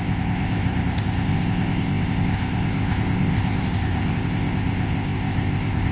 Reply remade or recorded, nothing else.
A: remade